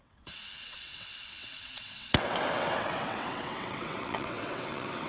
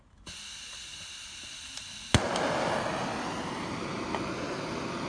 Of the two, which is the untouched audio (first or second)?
second